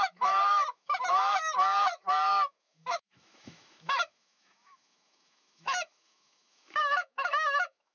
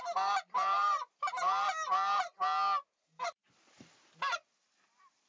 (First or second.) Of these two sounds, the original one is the second